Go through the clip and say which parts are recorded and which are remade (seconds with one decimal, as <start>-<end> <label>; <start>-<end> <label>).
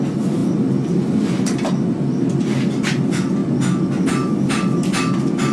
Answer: 0.0-5.5 recorded